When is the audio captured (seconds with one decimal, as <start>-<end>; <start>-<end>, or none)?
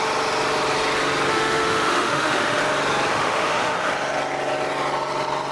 0.0-1.3; 2.6-3.1; 3.9-5.5